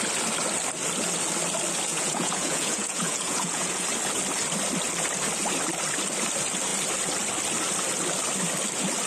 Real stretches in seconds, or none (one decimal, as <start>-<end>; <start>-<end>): 0.0-1.9; 3.8-9.1